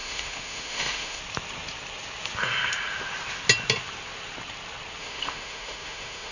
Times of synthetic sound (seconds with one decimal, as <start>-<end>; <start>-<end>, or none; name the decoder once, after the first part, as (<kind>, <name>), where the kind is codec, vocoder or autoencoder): 0.0-1.2 (autoencoder, DAC-VAE); 5.0-6.3